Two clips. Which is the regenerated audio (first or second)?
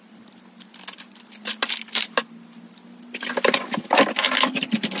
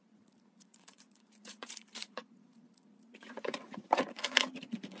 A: second